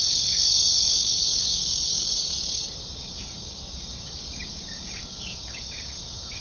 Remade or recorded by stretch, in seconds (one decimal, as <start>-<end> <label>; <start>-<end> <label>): 0.0-6.4 remade